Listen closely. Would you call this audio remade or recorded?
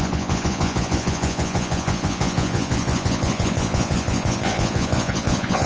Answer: remade